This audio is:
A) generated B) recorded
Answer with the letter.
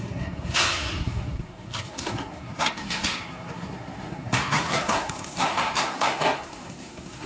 A